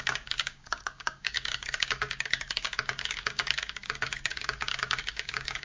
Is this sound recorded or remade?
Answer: remade